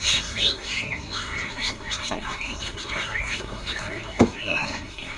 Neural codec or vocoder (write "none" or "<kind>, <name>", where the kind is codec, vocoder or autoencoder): codec, SNAC